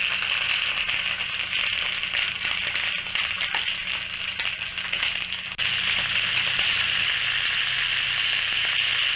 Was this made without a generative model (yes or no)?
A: yes